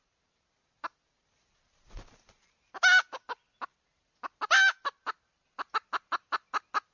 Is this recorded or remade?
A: recorded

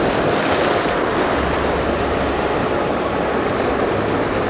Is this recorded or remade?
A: recorded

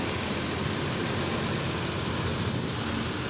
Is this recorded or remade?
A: recorded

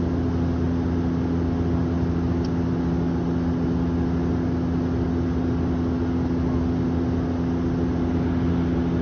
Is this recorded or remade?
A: recorded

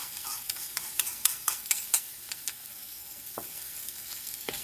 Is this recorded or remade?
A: remade